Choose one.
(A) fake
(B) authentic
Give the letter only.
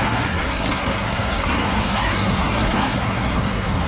A